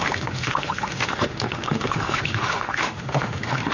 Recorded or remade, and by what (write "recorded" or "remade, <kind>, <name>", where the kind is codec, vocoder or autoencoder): remade, autoencoder, DAC-VAE